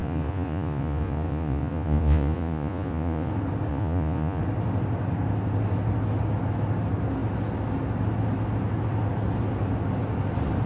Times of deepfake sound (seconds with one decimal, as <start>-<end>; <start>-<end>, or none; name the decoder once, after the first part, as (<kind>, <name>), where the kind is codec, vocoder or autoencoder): 0.0-3.3 (vocoder, Vocos); 3.7-4.4